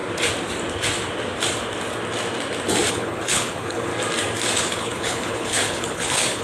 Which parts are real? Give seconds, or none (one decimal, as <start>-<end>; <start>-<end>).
0.0-2.9; 3.9-4.6